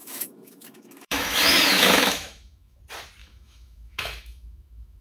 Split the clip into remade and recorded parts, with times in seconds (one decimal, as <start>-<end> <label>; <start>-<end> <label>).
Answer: 0.0-2.8 remade; 2.8-3.2 recorded; 3.2-5.0 remade